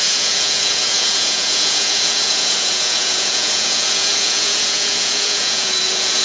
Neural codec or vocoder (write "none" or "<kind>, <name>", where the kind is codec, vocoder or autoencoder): vocoder, Vocos